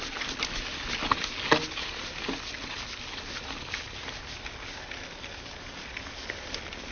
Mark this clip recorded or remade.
recorded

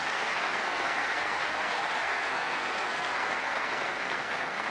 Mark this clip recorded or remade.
remade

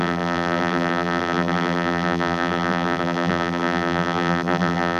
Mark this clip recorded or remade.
remade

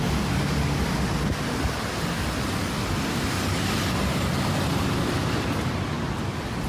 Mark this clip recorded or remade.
recorded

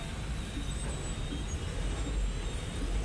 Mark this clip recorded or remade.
recorded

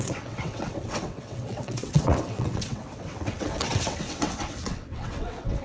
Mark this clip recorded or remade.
remade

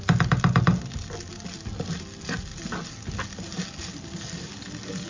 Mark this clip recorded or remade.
recorded